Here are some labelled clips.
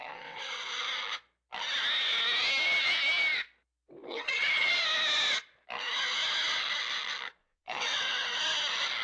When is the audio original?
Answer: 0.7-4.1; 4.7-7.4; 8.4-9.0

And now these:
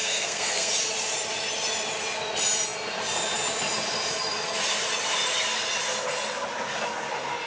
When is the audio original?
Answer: 0.7-7.5

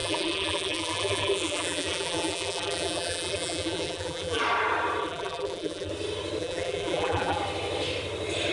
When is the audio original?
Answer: 4.4-5.0; 5.9-6.4; 7.4-8.5

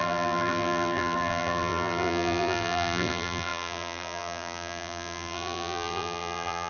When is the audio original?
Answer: none

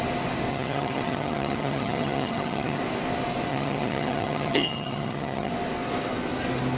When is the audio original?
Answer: 0.0-0.5; 2.8-3.5; 5.5-6.8